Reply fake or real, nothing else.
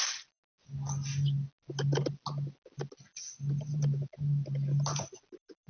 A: real